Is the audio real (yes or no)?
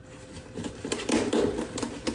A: yes